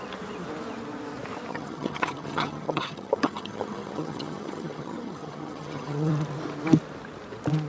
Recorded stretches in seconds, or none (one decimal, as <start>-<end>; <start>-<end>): 0.0-1.5; 6.1-7.7